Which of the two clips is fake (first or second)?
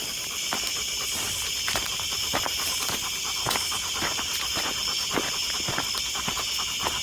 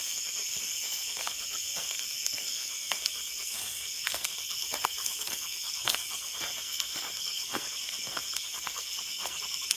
second